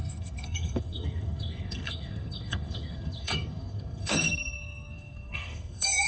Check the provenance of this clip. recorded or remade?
remade